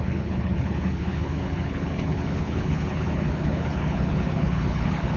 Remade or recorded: remade